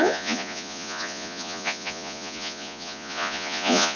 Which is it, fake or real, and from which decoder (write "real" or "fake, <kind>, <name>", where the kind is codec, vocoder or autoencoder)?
fake, vocoder, Vocos